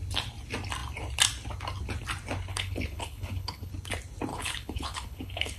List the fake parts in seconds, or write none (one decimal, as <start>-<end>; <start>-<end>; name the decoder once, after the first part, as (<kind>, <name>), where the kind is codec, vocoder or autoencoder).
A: 2.5-3.7 (codec, HILCodec); 4.3-5.6